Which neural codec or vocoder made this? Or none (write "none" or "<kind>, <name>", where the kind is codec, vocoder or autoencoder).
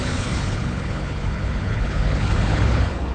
codec, HILCodec